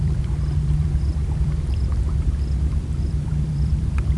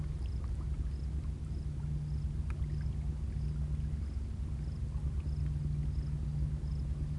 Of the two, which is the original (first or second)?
second